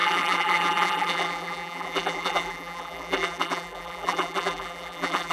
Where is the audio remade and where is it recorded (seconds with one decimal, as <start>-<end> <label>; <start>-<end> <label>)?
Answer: 0.0-5.3 remade